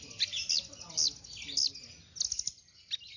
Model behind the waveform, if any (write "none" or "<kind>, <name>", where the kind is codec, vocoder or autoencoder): none